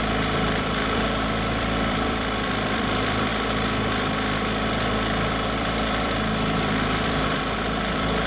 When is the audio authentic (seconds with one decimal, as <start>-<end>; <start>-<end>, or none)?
3.3-4.9